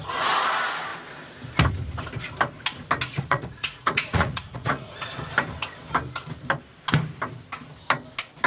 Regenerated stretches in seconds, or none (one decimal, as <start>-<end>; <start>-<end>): 3.1-5.1